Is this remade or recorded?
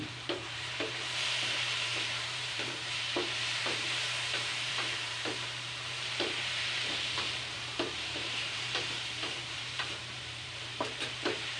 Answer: remade